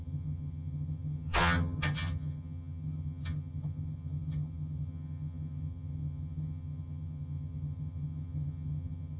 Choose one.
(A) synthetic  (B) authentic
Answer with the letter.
A